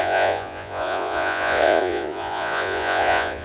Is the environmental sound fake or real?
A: fake